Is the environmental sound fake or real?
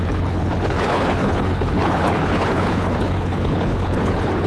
fake